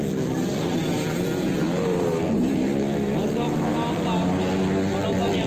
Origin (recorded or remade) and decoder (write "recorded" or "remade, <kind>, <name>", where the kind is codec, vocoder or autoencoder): recorded